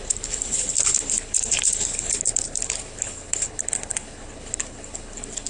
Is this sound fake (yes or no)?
yes